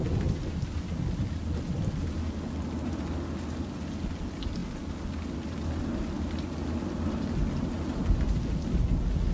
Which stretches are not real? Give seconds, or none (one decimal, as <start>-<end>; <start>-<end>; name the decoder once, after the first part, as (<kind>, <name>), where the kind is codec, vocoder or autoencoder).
none